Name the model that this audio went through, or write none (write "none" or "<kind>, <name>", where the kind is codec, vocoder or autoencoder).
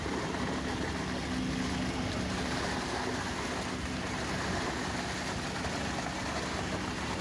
none